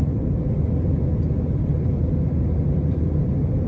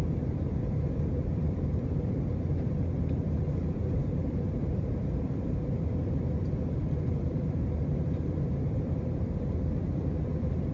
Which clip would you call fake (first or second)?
second